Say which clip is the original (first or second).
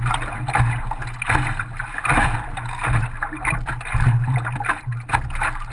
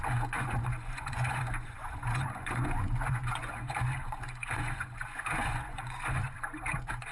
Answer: first